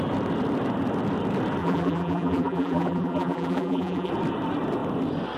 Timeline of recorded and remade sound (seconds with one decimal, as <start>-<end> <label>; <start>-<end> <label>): 0.0-1.6 recorded; 1.6-4.1 remade; 4.1-5.4 recorded

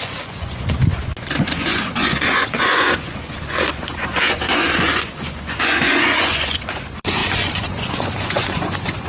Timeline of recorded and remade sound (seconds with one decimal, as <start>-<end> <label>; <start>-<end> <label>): 0.0-9.1 remade

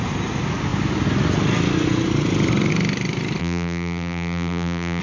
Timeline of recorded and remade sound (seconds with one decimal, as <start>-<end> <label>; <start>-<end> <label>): 0.0-3.4 recorded; 3.4-5.0 remade

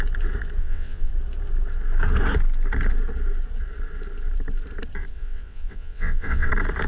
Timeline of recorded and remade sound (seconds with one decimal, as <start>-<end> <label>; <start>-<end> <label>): 0.0-0.6 recorded; 0.6-1.1 remade; 1.1-5.1 recorded; 5.1-6.5 remade; 6.5-6.9 recorded